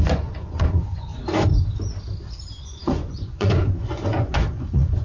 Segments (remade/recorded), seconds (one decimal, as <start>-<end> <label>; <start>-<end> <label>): 0.0-1.1 remade; 1.1-2.6 recorded; 2.6-5.0 remade